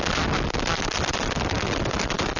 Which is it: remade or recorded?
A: recorded